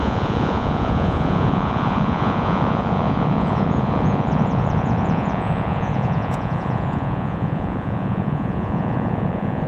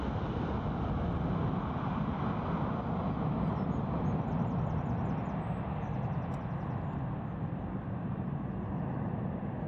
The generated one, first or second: first